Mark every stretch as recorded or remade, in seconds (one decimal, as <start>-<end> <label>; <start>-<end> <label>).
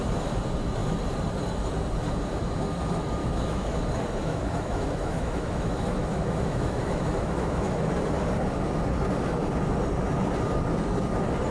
0.0-3.2 recorded; 3.2-3.8 remade; 3.8-4.2 recorded; 4.2-7.9 remade; 7.9-11.5 recorded